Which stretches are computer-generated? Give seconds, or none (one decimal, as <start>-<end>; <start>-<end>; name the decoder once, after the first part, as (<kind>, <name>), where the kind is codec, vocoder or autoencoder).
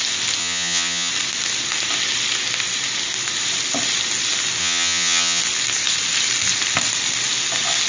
0.4-1.1 (vocoder, HiFi-GAN); 4.6-5.4